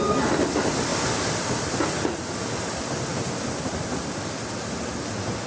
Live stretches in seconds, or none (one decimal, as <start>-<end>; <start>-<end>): 0.0-5.5